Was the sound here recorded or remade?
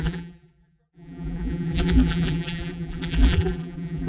remade